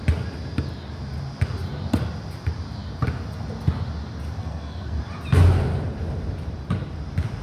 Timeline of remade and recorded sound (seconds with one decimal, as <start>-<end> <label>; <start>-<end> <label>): 0.0-4.4 recorded; 4.4-5.0 remade; 5.0-7.4 recorded